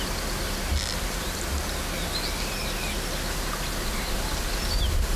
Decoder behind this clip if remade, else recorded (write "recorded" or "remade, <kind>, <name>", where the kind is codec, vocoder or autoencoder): recorded